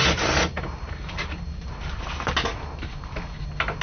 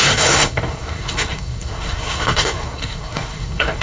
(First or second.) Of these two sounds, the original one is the first